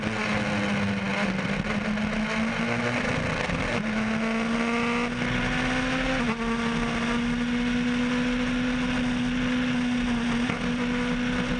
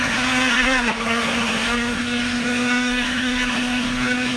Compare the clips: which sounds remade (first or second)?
second